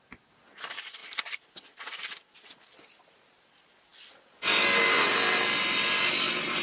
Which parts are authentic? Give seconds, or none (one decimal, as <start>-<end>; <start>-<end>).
0.0-6.6